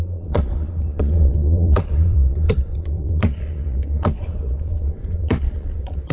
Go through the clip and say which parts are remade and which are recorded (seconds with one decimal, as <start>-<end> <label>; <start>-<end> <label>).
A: 0.0-6.1 remade